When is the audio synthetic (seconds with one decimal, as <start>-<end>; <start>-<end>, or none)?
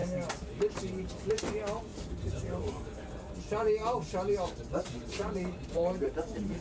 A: 1.9-2.7; 5.2-6.6